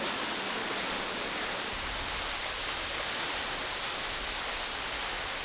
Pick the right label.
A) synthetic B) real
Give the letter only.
B